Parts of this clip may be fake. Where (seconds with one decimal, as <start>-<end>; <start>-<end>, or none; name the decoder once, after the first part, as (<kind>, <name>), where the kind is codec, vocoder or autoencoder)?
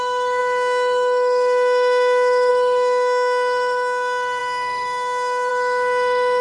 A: 0.0-6.4 (autoencoder, DAC-VAE)